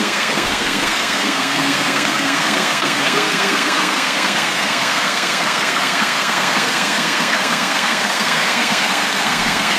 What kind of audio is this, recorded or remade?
remade